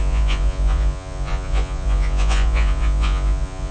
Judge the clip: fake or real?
fake